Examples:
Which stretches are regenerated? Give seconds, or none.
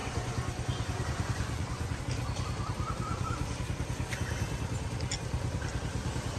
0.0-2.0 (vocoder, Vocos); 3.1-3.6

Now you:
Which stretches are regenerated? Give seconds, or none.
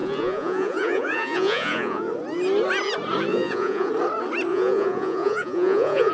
0.0-2.1 (vocoder, Vocos); 3.3-3.9; 4.5-6.1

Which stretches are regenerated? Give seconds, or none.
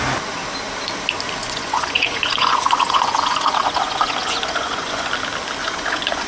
1.4-5.1 (vocoder, Vocos); 5.6-6.3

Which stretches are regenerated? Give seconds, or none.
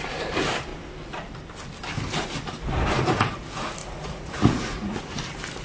3.8-5.0 (vocoder, Vocos)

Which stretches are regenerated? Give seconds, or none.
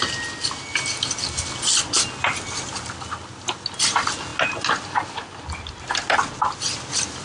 none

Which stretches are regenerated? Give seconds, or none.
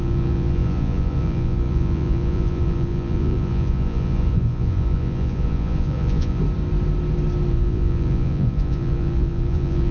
0.0-6.4 (vocoder, Vocos); 7.5-9.9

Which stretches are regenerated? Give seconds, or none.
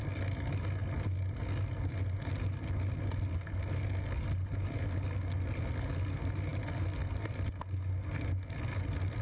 none